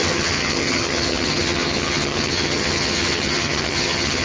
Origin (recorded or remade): remade